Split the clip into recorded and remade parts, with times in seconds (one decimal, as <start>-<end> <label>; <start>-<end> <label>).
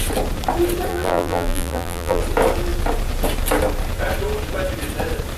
0.0-0.9 recorded; 0.9-2.2 remade; 2.2-5.4 recorded